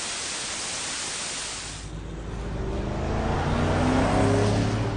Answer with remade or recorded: recorded